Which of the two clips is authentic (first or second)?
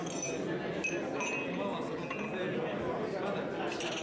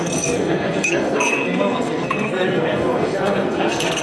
first